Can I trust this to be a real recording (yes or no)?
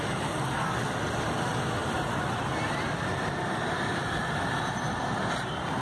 yes